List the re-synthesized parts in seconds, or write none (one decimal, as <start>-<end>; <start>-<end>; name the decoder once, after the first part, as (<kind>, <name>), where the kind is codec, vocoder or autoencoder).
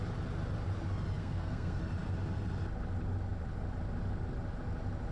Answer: 1.2-1.8 (codec, SNAC)